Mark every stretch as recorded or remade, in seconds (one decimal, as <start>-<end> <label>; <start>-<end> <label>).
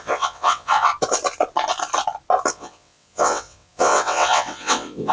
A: 0.0-0.9 remade; 0.9-2.5 recorded; 2.5-5.1 remade